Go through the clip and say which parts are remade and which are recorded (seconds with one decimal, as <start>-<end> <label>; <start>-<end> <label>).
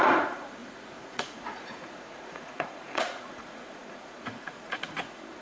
0.0-5.4 remade